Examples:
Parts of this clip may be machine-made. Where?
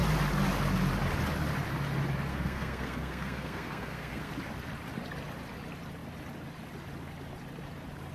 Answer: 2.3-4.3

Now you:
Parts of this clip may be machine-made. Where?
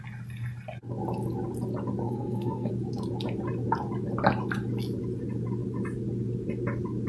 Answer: 2.0-2.7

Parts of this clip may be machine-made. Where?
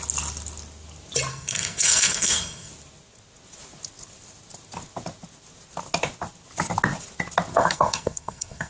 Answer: 1.3-2.7; 7.5-8.7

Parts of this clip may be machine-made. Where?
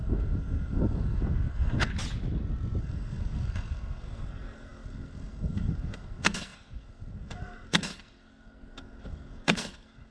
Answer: 0.0-1.9; 2.8-10.1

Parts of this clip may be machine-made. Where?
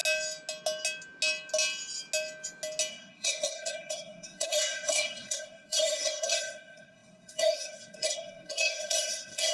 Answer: 2.9-9.5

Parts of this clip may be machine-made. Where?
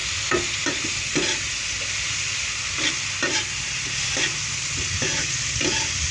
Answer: none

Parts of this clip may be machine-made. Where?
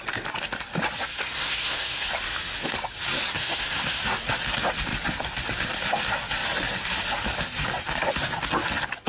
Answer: 1.1-2.1; 3.3-4.0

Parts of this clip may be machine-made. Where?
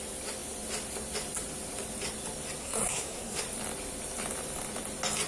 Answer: 2.6-3.4